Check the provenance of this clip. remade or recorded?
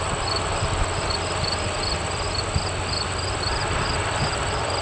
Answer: recorded